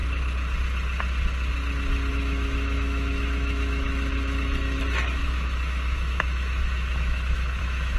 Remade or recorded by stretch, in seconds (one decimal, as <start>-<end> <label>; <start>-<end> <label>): 0.0-2.1 recorded; 2.1-8.0 remade